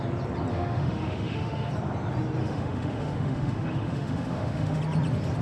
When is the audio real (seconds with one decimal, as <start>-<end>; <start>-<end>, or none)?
0.0-0.5; 1.7-2.4; 4.8-5.4